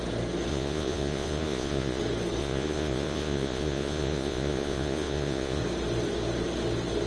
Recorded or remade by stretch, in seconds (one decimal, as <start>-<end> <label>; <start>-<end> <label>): 0.0-0.5 recorded; 0.5-2.0 remade; 2.0-2.4 recorded; 2.4-5.6 remade; 5.6-7.1 recorded